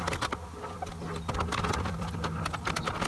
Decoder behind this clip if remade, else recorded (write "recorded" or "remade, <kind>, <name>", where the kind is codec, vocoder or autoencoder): recorded